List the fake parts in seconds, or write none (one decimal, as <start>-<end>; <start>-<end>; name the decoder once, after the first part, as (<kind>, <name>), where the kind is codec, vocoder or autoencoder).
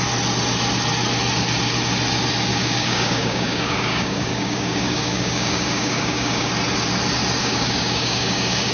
2.5-6.5 (codec, DAC); 7.4-8.7